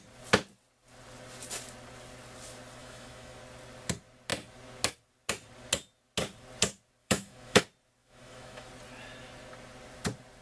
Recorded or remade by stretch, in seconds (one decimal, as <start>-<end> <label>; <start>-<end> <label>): 0.0-2.8 recorded; 2.8-3.4 remade; 3.4-7.0 recorded; 7.0-7.6 remade; 7.6-8.0 recorded; 8.0-8.7 remade; 8.7-10.4 recorded